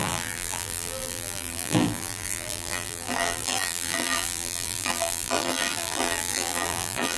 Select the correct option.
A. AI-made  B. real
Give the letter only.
A